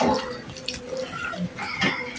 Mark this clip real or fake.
fake